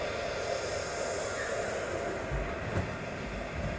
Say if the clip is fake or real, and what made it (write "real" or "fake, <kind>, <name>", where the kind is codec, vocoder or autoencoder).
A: real